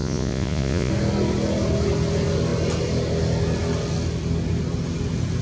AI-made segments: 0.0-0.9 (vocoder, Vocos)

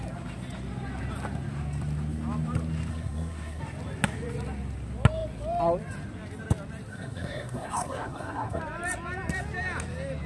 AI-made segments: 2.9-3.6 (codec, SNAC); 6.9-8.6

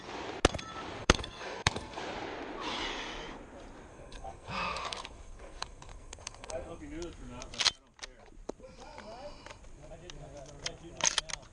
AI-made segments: 1.0-2.0 (codec, SNAC); 3.9-6.8

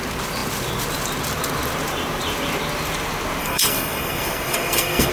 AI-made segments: 3.4-5.1 (codec, SNAC)

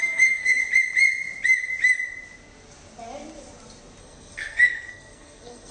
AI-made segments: 0.0-0.6 (codec, SNAC); 4.0-5.7